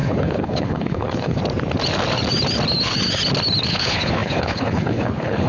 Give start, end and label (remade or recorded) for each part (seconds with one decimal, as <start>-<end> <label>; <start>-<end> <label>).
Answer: 0.0-1.4 remade; 1.4-3.7 recorded; 3.7-5.5 remade